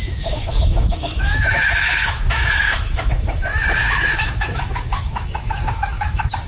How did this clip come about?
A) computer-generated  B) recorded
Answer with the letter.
A